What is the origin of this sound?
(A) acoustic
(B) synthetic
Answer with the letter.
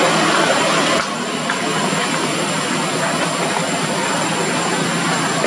A